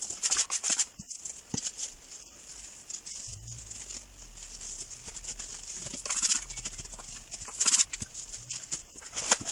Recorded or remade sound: remade